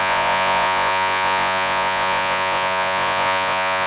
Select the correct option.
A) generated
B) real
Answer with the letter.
A